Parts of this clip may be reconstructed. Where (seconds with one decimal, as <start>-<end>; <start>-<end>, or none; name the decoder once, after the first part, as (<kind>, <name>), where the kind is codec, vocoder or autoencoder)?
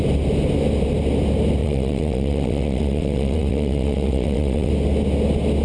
1.6-4.7 (vocoder, WaveNeXt)